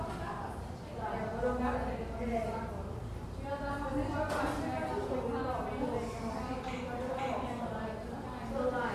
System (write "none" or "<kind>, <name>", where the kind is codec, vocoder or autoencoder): none